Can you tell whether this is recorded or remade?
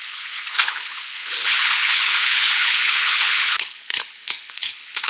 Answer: remade